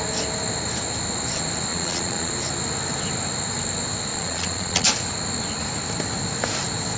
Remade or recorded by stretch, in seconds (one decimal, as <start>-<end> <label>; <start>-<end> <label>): 0.0-1.7 recorded; 1.7-2.3 remade; 2.3-4.1 recorded; 4.1-4.9 remade; 4.9-7.0 recorded

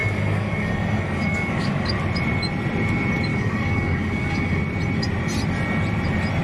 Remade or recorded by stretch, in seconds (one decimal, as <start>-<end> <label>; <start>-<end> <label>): 0.0-1.9 remade; 1.9-3.3 recorded; 3.3-4.6 remade; 4.6-6.4 recorded

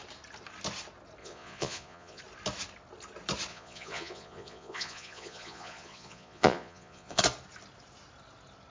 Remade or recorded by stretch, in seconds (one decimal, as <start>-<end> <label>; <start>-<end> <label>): 0.0-1.2 recorded; 1.2-2.2 remade; 2.2-3.5 recorded; 3.5-7.2 remade; 7.2-8.7 recorded

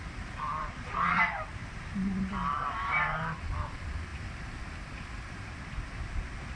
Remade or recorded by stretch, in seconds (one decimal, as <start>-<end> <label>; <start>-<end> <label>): 0.0-0.6 recorded; 0.6-1.2 remade; 1.2-6.6 recorded